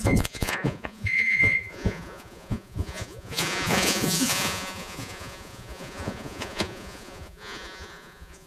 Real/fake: fake